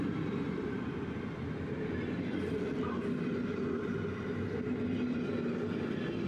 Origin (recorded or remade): recorded